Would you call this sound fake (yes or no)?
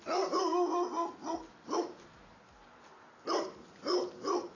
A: no